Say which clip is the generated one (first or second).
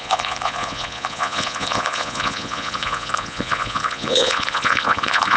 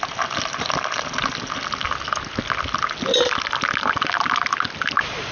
first